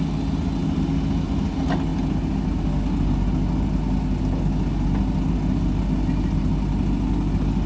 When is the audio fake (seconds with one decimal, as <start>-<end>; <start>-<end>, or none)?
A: none